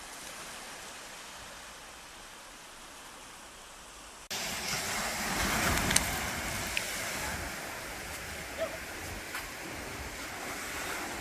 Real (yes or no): yes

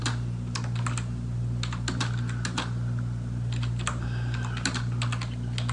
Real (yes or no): yes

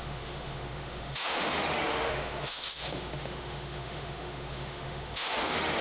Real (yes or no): no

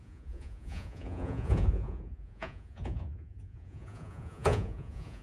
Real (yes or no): no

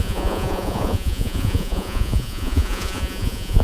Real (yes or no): no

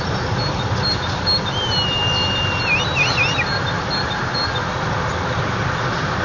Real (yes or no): yes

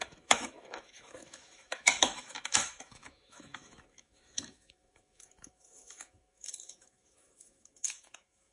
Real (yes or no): no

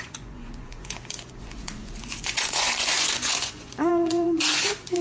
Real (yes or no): no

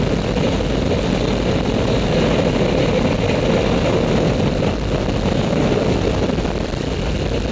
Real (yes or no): yes